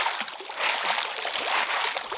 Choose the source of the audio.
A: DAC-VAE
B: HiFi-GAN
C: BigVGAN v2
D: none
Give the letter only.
D